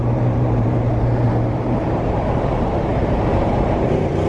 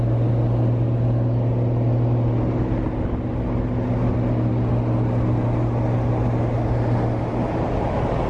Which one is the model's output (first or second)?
first